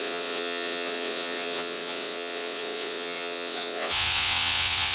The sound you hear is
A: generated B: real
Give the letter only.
A